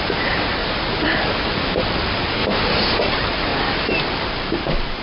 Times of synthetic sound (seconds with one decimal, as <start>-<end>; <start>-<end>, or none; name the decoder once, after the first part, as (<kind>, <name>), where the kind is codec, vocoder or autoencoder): 0.0-0.6 (vocoder, BigVGAN v2); 1.2-3.5; 4.0-5.0